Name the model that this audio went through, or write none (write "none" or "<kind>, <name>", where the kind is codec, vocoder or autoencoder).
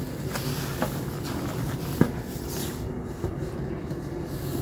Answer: none